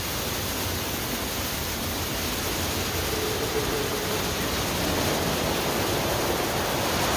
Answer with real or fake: real